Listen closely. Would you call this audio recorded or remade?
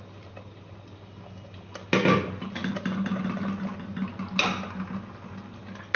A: recorded